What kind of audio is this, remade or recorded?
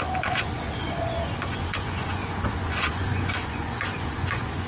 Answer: remade